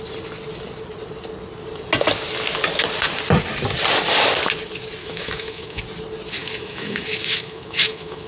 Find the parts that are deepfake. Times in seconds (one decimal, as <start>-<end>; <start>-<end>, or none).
5.0-5.8; 6.4-8.3